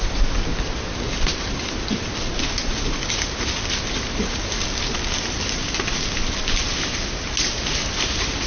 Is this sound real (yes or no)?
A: yes